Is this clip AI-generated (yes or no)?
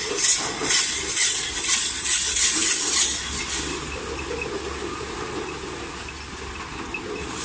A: no